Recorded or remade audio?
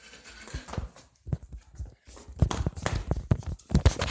recorded